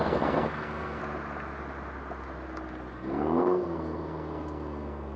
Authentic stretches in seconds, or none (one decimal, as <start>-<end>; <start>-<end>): 1.0-2.9